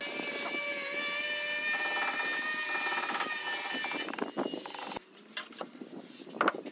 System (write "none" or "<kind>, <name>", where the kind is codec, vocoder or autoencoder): none